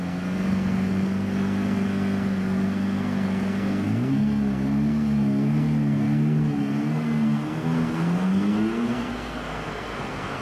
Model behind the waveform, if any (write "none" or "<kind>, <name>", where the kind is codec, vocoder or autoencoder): codec, SNAC